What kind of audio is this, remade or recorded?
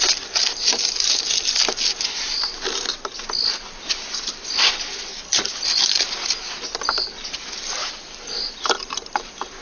recorded